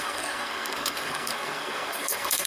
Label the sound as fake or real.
fake